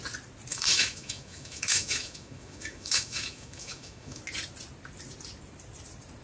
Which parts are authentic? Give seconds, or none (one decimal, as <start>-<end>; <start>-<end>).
0.0-0.5; 4.2-6.2